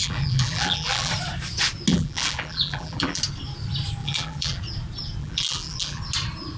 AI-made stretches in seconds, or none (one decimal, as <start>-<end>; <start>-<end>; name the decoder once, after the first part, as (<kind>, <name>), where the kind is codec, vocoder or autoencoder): 0.0-1.1 (vocoder, BigVGAN v2); 1.9-3.2; 4.0-4.6; 5.2-6.0